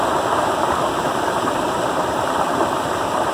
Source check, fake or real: fake